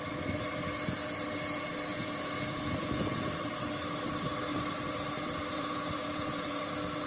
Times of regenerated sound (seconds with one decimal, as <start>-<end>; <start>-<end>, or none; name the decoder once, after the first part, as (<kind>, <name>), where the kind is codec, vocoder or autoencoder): 1.9-3.3 (vocoder, Vocos); 5.5-6.6